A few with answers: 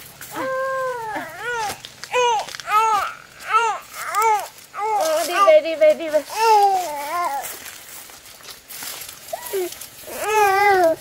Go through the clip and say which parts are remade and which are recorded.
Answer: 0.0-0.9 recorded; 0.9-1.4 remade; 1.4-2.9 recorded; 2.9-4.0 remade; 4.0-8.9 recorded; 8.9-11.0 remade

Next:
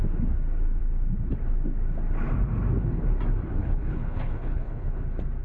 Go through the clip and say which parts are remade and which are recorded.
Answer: 0.0-3.6 recorded; 3.6-5.0 remade; 5.0-5.4 recorded

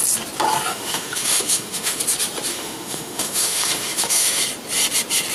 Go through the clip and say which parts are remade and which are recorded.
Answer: 0.0-0.7 recorded; 0.7-2.0 remade; 2.0-2.5 recorded; 2.5-4.4 remade; 4.4-5.3 recorded

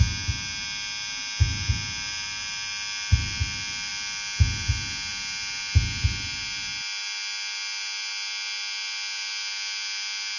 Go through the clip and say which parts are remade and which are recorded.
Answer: 0.0-10.4 recorded

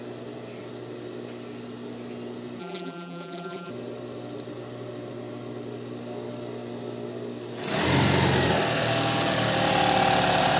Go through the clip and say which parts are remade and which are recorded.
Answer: 0.0-2.6 recorded; 2.6-3.7 remade; 3.7-10.6 recorded

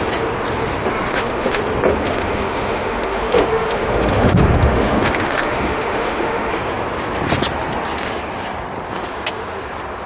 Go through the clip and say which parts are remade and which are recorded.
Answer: 0.0-1.1 recorded; 1.1-1.6 remade; 1.6-2.0 recorded; 2.0-6.5 remade; 6.5-10.1 recorded

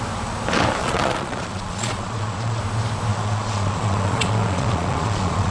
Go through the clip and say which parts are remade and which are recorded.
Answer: 0.0-0.8 recorded; 0.8-2.6 remade; 2.6-3.1 recorded; 3.1-5.5 remade